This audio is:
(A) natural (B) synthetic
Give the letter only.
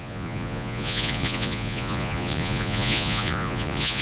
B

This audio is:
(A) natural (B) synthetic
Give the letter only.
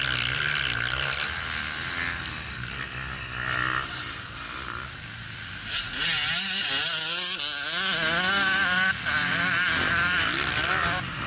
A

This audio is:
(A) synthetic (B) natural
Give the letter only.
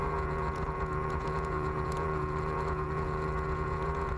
A